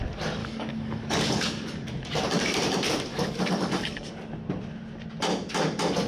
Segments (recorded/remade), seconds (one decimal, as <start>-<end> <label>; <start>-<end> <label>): 0.0-0.4 recorded; 0.4-1.9 remade; 1.9-3.1 recorded; 3.1-4.1 remade; 4.1-6.1 recorded